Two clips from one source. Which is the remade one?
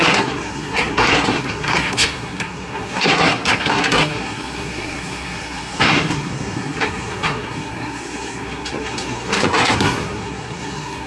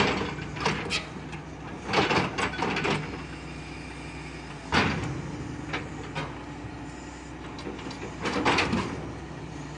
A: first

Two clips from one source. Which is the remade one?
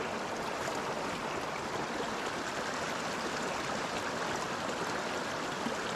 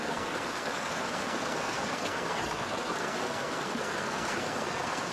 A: second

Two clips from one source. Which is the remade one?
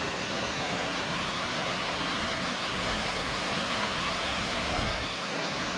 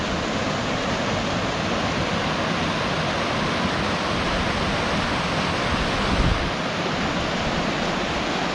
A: first